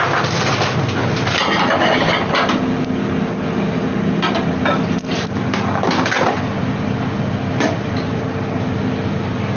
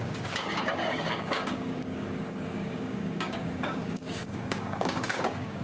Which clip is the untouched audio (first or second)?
first